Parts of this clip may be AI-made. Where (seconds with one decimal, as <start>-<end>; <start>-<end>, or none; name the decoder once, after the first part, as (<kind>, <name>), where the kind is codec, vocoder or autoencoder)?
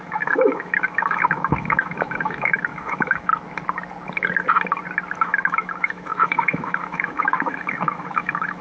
0.0-3.3 (autoencoder, DAC-VAE); 5.2-8.6